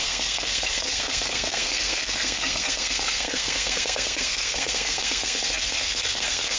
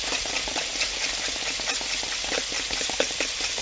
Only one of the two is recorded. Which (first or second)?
second